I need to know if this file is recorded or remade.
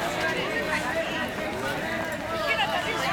recorded